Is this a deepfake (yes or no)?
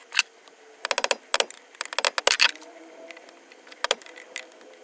no